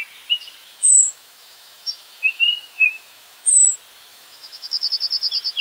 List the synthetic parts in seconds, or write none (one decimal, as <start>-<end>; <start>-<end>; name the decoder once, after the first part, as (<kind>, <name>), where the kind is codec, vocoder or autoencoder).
0.6-3.5 (autoencoder, DAC-VAE); 4.1-4.9

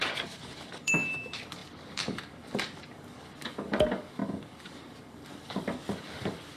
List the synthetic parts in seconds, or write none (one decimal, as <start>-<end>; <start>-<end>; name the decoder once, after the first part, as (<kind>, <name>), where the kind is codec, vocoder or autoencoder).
0.0-6.6 (codec, DAC)

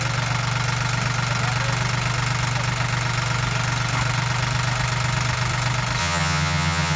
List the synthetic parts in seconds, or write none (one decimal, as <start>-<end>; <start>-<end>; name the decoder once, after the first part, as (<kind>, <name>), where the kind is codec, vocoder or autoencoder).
6.0-7.0 (vocoder, HiFi-GAN)